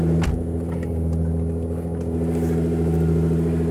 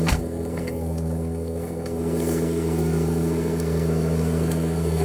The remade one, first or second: second